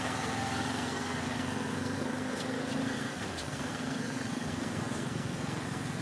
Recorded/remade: remade